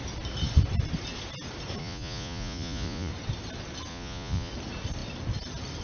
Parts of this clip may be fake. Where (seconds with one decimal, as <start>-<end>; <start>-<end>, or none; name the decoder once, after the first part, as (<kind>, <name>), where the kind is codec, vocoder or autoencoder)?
1.8-3.1 (vocoder, Vocos); 3.9-4.5